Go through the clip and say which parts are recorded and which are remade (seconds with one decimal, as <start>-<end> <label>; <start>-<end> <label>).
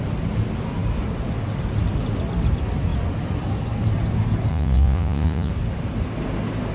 0.0-4.5 recorded; 4.5-5.5 remade; 5.5-6.7 recorded